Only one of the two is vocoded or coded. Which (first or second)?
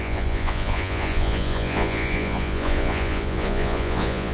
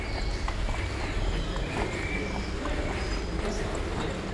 first